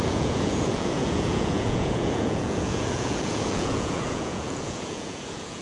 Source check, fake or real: fake